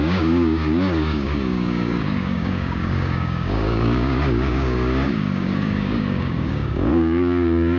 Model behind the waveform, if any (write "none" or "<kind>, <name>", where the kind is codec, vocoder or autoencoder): codec, DAC